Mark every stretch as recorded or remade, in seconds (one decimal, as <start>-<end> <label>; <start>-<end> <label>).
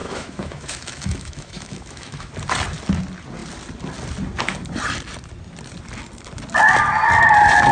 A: 0.0-2.3 remade; 2.3-7.7 recorded